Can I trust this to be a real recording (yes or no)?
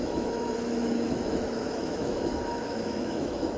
no